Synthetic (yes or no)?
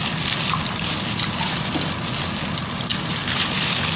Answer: no